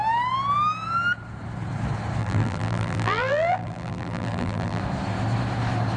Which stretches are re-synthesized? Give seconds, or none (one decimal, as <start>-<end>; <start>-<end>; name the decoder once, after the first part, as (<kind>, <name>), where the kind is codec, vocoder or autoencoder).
2.2-4.8 (vocoder, BigVGAN v2)